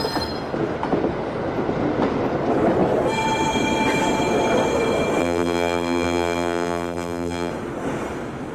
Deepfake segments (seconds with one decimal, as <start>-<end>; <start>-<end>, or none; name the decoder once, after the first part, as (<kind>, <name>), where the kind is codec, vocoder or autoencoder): 5.2-7.5 (vocoder, BigVGAN v2)